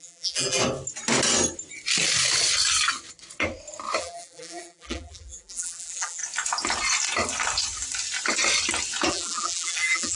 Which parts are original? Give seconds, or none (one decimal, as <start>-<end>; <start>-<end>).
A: 0.6-4.0; 6.2-9.1